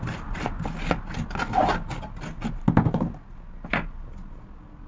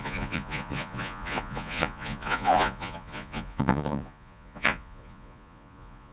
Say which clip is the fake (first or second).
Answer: second